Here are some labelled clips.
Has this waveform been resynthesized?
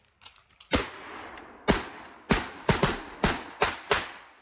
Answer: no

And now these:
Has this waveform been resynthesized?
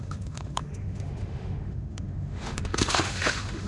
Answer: yes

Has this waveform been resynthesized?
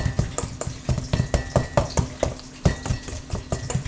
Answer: no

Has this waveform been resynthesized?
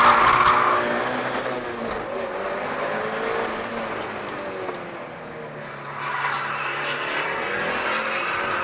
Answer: no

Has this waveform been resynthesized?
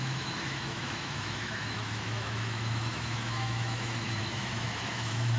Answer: yes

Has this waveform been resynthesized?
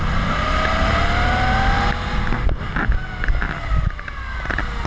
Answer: no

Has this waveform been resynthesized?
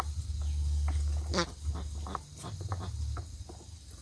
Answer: no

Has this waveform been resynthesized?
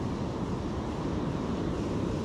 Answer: yes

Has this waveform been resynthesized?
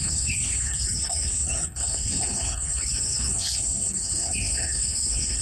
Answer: yes